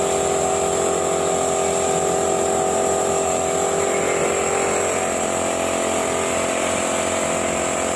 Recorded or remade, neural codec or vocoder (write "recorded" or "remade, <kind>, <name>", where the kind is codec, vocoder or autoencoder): recorded